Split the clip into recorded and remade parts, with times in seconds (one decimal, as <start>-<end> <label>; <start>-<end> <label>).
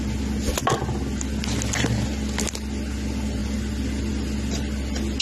0.0-5.2 recorded